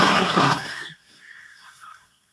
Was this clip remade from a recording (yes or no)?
yes